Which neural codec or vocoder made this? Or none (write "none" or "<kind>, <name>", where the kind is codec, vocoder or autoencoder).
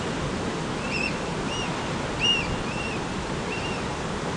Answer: none